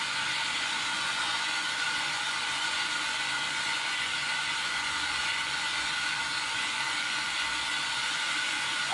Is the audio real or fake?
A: fake